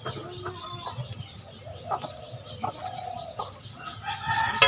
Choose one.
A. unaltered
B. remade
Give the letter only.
A